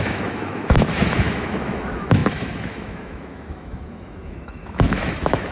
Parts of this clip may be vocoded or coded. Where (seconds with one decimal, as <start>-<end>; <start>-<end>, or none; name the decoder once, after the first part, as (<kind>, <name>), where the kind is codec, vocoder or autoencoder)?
0.0-5.5 (autoencoder, DAC-VAE)